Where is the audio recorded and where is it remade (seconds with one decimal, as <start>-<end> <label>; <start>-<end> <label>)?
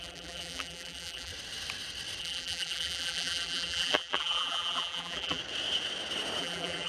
0.0-1.3 remade; 1.3-2.2 recorded; 2.2-5.4 remade; 5.4-6.4 recorded; 6.4-6.9 remade